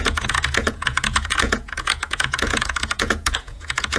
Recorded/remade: remade